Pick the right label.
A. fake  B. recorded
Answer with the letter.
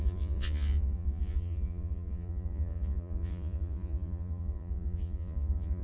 A